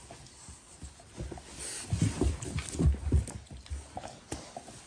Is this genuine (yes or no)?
yes